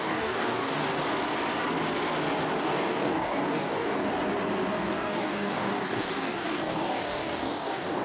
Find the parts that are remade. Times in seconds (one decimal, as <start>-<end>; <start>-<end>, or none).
0.0-0.9; 2.6-4.1; 4.7-8.0